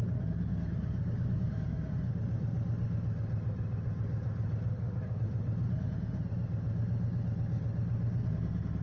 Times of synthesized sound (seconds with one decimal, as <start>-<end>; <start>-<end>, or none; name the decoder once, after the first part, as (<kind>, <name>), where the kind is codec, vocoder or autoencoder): 0.5-1.9 (codec, DAC); 4.7-5.2